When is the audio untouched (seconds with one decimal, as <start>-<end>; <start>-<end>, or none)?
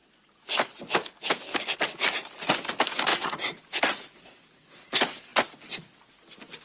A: 0.0-3.1; 3.6-6.6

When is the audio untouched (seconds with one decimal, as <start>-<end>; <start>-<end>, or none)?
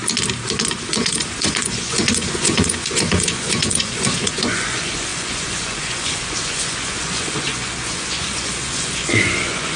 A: 0.0-0.9